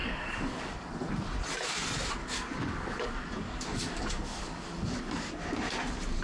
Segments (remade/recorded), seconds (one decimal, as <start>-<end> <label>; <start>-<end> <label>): 0.0-0.9 remade; 0.9-2.2 recorded; 2.2-5.3 remade; 5.3-6.2 recorded